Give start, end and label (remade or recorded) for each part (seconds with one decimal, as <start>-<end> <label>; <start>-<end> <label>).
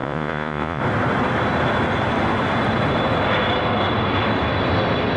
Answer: 0.0-0.8 remade; 0.8-5.2 recorded